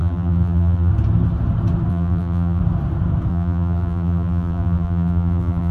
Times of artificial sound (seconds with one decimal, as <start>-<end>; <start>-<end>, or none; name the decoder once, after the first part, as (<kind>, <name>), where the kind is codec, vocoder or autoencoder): 0.0-0.9 (vocoder, BigVGAN v2); 1.9-2.6; 3.3-5.7

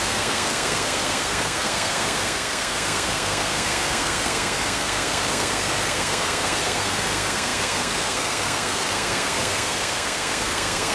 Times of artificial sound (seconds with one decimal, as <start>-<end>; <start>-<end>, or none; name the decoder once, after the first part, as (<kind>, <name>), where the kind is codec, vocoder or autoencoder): 0.0-10.9 (codec, SNAC)

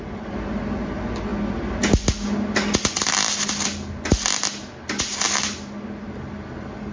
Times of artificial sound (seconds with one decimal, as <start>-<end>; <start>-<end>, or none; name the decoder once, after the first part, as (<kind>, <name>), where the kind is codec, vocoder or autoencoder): none